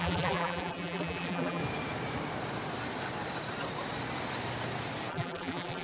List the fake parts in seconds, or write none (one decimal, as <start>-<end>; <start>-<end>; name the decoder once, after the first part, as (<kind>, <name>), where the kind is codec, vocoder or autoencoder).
0.0-1.6 (vocoder, BigVGAN v2); 5.1-5.8